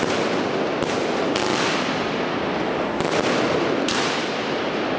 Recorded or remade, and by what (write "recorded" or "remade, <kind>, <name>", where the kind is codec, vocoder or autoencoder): recorded